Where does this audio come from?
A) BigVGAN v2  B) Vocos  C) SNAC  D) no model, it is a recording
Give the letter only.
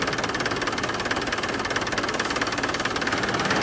D